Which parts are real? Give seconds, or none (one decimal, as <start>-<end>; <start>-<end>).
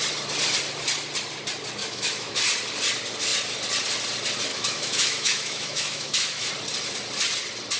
0.0-1.8; 2.4-4.5; 6.5-7.8